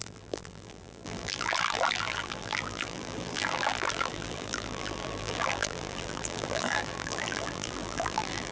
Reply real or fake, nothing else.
fake